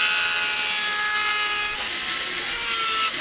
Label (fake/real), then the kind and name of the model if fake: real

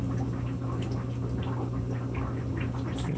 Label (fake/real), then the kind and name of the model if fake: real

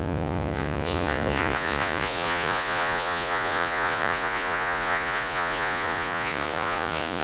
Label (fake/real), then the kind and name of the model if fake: fake, vocoder, Vocos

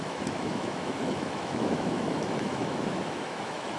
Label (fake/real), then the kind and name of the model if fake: fake, autoencoder, DAC-VAE